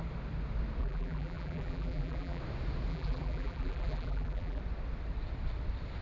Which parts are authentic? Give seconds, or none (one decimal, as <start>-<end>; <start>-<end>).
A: 0.0-0.8; 2.4-2.9; 4.6-6.0